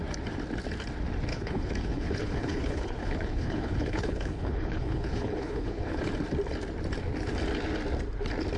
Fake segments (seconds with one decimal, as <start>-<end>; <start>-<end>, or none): 1.3-6.0